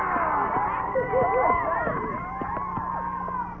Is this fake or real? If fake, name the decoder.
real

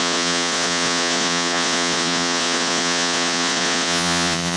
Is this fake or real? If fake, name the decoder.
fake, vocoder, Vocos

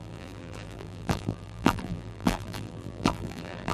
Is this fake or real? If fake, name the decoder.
fake, vocoder, BigVGAN v2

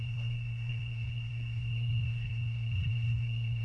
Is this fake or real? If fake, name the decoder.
fake, codec, SNAC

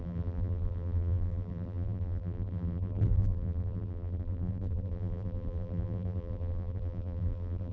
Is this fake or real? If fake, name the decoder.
fake, vocoder, BigVGAN v2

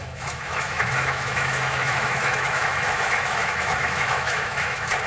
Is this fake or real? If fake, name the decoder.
fake, autoencoder, DAC-VAE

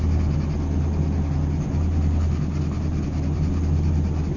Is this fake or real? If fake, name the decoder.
real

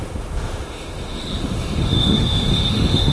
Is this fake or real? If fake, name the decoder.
fake, autoencoder, DAC-VAE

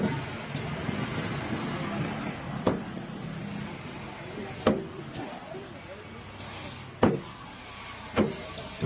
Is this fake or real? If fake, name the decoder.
real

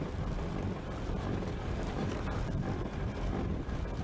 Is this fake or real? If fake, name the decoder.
fake, vocoder, BigVGAN v2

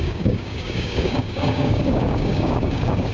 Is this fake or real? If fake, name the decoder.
fake, codec, DAC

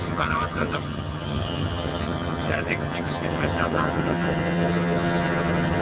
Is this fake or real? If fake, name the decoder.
fake, vocoder, HiFi-GAN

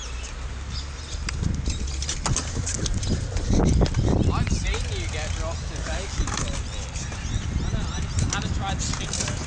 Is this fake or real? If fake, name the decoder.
real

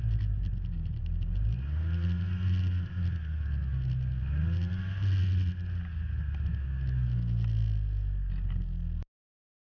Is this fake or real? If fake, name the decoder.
real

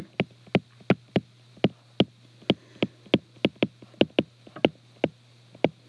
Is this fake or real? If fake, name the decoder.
real